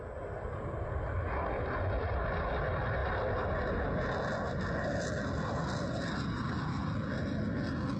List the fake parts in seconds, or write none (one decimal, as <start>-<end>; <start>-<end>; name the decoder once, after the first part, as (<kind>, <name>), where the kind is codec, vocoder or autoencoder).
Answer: none